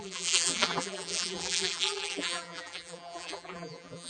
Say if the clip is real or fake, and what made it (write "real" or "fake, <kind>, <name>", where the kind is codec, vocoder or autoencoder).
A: fake, vocoder, BigVGAN v2